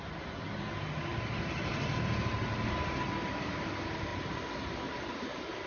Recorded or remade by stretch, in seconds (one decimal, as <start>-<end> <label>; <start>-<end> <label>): 0.0-5.7 recorded